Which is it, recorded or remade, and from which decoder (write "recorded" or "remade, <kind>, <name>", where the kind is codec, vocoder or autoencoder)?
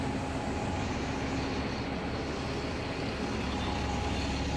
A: recorded